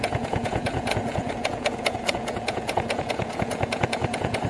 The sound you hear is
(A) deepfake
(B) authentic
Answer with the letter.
A